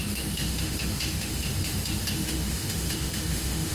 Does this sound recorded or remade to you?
remade